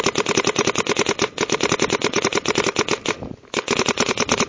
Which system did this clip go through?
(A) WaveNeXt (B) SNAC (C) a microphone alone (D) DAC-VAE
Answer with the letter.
C